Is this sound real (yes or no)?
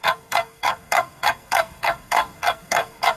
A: no